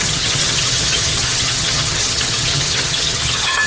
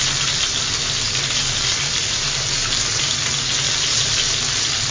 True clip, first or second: second